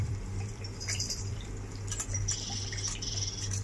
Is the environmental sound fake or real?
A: fake